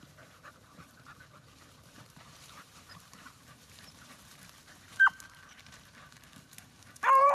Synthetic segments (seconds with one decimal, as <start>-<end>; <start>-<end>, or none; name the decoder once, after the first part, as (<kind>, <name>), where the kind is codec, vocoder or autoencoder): 0.0-7.3 (vocoder, BigVGAN v2)